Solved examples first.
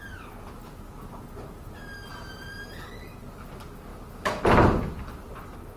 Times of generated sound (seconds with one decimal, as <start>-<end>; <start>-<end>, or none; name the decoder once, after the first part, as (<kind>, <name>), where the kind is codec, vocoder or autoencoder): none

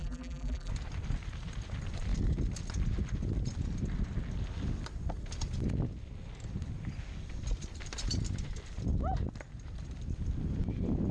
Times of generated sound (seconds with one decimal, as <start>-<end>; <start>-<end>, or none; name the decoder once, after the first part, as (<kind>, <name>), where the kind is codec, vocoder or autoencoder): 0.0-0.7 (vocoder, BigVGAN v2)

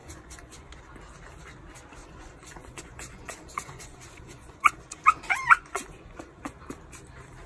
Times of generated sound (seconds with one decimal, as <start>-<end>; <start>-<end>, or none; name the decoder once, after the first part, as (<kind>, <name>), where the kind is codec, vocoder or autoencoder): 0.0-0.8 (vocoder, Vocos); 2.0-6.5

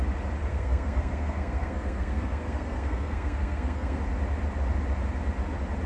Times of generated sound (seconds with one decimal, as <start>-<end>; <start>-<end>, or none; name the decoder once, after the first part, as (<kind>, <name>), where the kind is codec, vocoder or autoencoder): 0.5-4.0 (codec, SNAC)